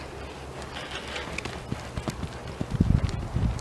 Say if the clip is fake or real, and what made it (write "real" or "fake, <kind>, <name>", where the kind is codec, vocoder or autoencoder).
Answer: real